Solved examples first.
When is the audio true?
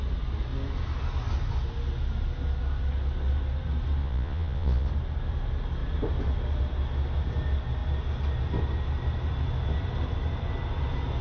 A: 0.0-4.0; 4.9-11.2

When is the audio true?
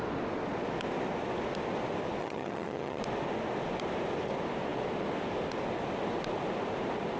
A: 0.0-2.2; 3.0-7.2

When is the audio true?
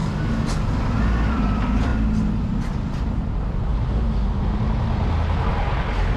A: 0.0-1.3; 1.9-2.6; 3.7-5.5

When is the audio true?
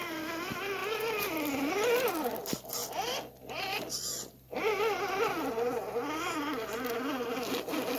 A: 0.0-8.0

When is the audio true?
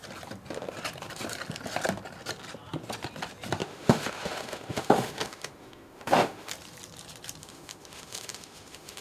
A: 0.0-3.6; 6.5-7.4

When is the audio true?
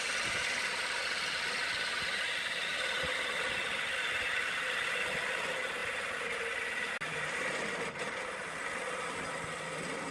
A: 0.0-10.1